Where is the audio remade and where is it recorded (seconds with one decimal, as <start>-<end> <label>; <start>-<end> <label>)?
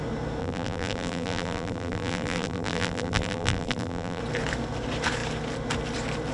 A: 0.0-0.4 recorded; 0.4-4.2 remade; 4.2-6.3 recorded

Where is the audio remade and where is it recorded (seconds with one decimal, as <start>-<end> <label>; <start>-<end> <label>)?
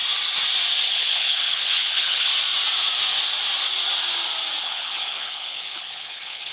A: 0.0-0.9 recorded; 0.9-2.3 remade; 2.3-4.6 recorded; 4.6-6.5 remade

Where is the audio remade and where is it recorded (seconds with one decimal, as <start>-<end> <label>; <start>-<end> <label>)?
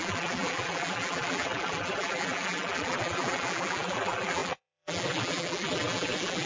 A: 0.0-6.5 remade